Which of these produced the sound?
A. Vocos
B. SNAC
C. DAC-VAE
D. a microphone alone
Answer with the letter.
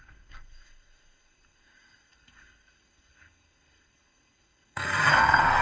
B